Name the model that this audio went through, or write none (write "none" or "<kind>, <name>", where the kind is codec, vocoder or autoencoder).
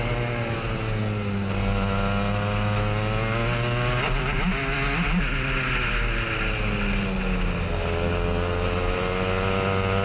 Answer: none